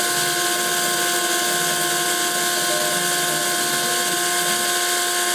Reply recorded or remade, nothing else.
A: recorded